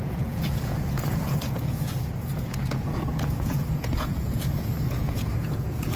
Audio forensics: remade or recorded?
remade